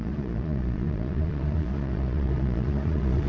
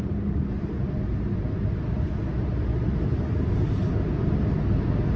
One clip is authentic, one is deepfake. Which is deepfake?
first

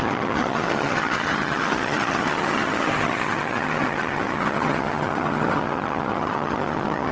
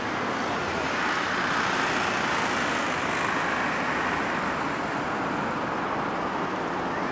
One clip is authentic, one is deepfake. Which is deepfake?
first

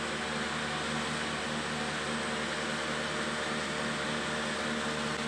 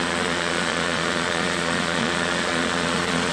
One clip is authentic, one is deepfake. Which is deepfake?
second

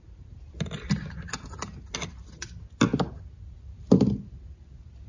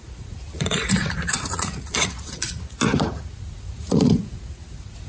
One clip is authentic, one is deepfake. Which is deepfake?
second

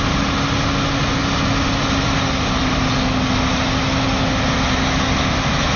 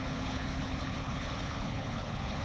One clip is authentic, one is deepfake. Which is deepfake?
second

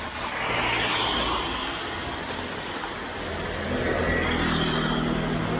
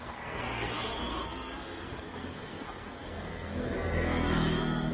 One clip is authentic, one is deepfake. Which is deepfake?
second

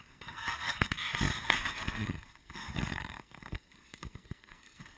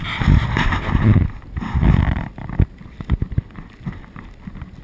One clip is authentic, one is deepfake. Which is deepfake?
first